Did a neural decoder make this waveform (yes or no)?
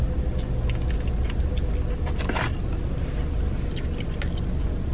no